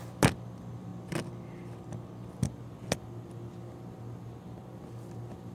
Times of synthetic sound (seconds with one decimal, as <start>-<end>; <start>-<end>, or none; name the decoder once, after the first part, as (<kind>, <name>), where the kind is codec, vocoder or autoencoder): none